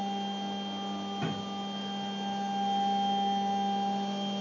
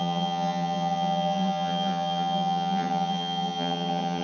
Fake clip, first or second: second